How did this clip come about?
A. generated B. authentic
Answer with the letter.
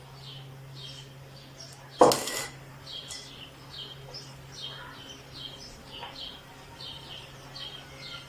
B